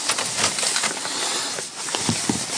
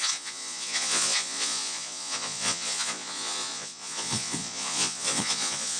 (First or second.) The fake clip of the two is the second